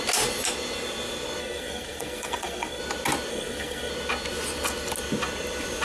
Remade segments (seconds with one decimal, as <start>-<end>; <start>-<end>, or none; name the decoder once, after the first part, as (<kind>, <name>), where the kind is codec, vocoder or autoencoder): 1.4-2.8 (codec, SNAC); 3.3-3.9